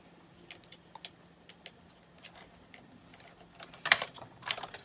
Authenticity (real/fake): real